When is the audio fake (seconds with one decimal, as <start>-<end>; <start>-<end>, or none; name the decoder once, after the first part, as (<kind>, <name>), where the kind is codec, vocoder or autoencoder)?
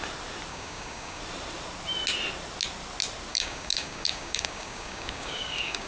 0.5-1.2 (codec, DAC); 3.3-5.9